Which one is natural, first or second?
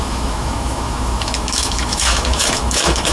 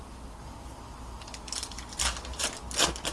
second